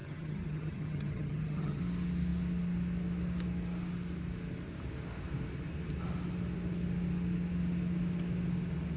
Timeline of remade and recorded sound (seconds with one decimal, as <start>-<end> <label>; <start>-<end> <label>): 0.0-1.8 remade; 1.8-9.0 recorded